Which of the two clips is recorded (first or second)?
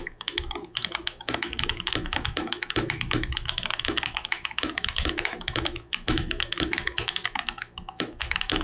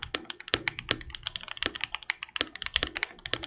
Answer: second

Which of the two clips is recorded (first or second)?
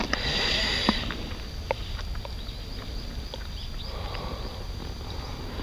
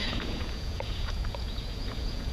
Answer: first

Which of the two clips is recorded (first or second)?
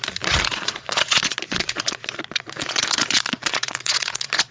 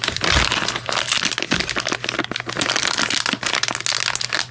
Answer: second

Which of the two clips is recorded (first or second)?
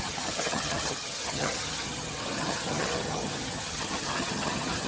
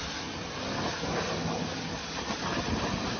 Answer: second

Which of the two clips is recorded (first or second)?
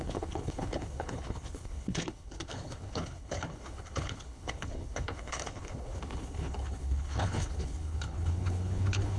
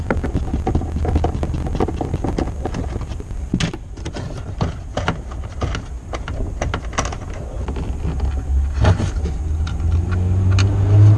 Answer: second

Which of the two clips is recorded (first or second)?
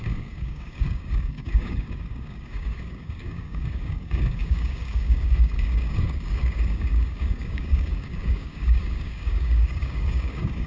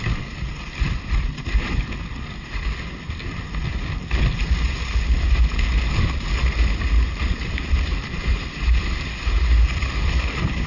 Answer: second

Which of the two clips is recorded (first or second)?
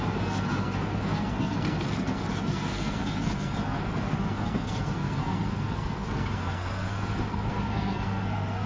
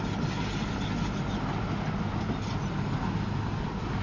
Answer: second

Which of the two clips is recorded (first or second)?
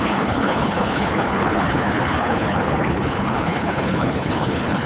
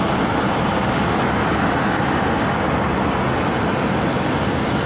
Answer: second